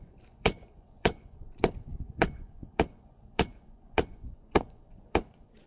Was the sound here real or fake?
fake